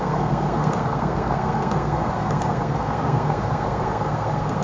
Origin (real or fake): fake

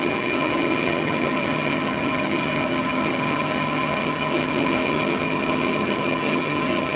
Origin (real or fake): fake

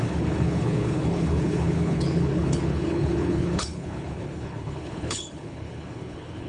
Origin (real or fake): fake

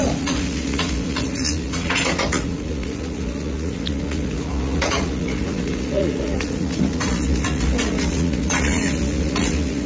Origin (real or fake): fake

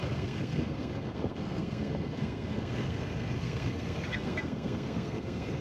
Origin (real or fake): fake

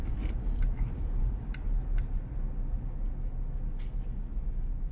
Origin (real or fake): real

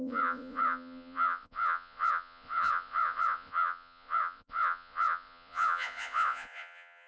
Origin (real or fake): fake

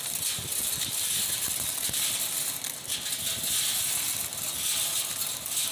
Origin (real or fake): real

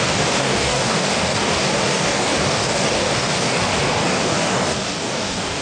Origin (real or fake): fake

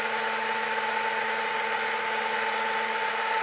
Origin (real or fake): real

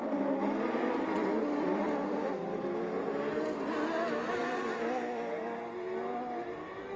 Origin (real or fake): real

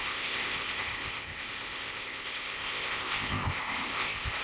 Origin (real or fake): fake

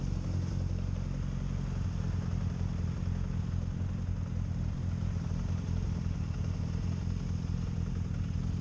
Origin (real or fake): real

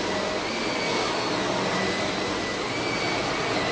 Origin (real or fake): real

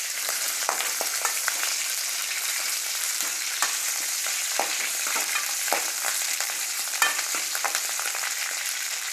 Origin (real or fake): fake